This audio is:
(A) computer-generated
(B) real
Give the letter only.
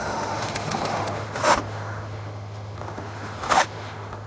A